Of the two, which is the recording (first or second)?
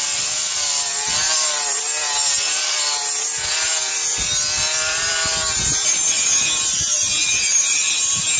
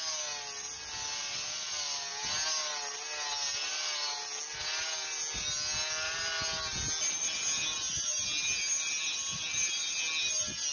second